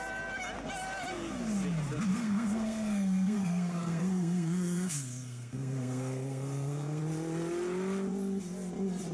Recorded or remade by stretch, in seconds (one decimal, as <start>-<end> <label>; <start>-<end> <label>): 0.0-2.1 recorded; 2.1-7.0 remade; 7.0-9.1 recorded